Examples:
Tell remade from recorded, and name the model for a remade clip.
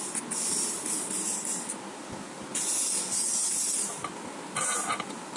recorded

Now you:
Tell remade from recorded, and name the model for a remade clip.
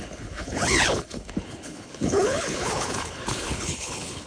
remade, codec, HILCodec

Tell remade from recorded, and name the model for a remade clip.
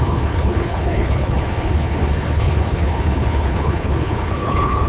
remade, codec, HILCodec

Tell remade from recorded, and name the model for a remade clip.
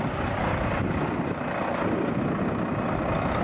recorded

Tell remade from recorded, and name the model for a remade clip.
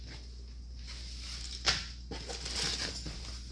recorded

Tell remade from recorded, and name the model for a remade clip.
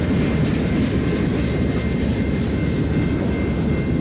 recorded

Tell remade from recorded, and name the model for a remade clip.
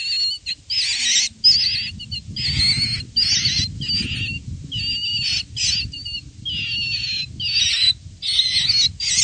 recorded